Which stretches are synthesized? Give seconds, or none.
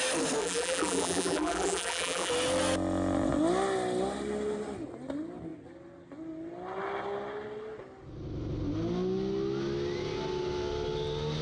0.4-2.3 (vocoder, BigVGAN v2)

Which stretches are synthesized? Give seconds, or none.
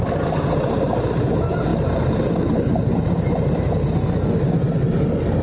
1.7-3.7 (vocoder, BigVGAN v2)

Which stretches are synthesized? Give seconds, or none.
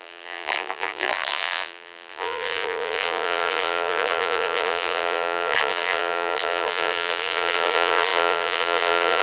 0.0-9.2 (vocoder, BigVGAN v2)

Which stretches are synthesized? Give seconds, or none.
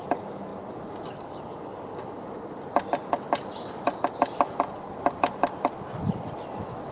none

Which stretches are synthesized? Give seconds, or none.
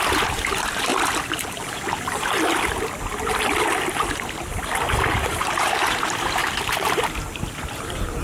0.0-0.9 (vocoder, BigVGAN v2); 5.1-6.4; 7.7-8.2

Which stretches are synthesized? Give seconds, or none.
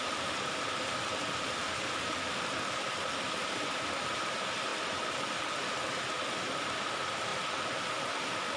0.0-4.7 (vocoder, BigVGAN v2); 6.6-7.3